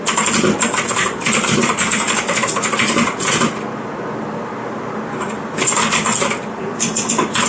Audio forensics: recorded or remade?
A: recorded